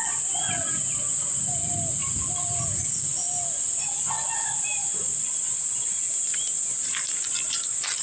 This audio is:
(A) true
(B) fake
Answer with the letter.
A